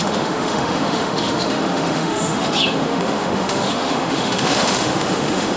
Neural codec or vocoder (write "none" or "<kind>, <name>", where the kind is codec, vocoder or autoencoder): autoencoder, DAC-VAE